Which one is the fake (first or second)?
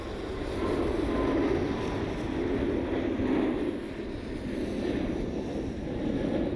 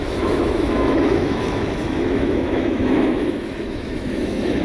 second